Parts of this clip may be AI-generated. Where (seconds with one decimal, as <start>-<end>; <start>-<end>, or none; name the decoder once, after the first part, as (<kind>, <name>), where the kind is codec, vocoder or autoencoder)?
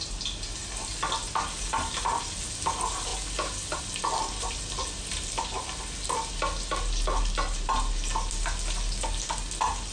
none